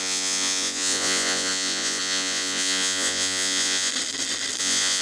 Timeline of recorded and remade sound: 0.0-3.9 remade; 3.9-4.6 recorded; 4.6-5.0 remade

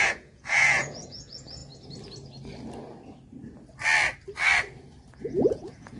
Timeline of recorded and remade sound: 0.0-1.6 remade; 1.6-5.2 recorded; 5.2-6.0 remade

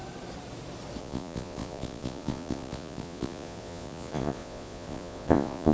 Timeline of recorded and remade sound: 0.0-1.0 recorded; 1.0-5.7 remade